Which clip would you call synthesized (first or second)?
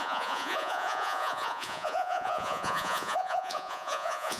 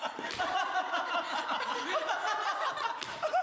first